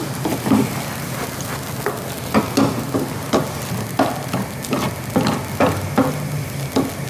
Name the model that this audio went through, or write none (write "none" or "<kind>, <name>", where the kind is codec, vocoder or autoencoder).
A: none